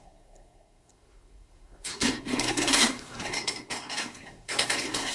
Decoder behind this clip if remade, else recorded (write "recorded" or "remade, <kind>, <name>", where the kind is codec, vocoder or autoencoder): remade, codec, SNAC